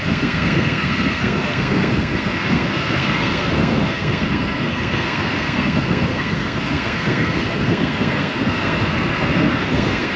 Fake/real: fake